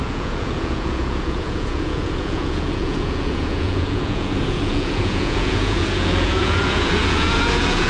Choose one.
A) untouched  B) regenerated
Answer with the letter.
B